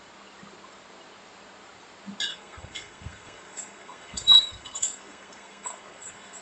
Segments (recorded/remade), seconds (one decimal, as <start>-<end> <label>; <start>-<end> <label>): 0.0-2.3 recorded; 2.3-6.4 remade